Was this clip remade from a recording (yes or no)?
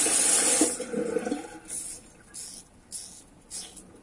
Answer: no